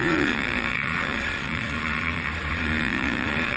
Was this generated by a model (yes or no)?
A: yes